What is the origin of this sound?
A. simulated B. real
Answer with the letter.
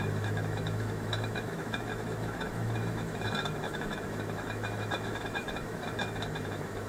A